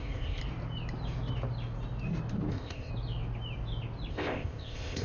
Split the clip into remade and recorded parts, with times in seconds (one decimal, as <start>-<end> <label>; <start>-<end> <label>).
0.0-0.4 remade; 0.4-2.5 recorded; 2.5-2.9 remade; 2.9-4.1 recorded; 4.1-5.0 remade